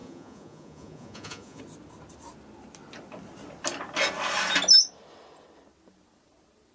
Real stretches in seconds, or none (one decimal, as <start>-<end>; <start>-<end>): 1.6-6.7